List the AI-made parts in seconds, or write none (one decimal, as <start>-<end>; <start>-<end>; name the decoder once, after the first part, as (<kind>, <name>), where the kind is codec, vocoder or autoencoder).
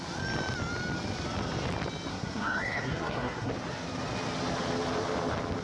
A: 2.1-3.5 (codec, SNAC)